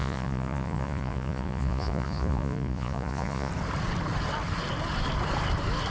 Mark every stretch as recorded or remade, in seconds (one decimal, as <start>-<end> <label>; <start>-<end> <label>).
0.0-3.5 remade; 3.5-5.9 recorded